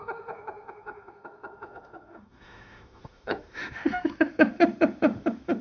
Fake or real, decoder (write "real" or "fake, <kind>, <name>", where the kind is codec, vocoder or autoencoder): fake, autoencoder, DAC-VAE